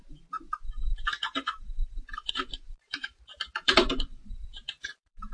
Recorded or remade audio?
remade